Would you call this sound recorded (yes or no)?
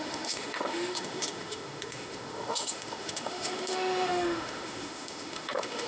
no